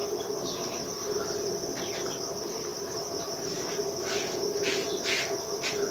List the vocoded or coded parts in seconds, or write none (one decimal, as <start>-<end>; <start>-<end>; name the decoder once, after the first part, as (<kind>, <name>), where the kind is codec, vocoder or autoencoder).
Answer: 2.7-5.9 (vocoder, BigVGAN v2)